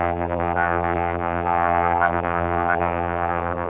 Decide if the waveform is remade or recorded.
remade